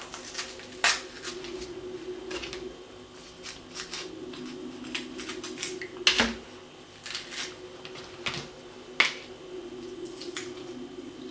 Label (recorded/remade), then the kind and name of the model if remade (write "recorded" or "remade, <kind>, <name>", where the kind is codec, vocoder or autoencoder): recorded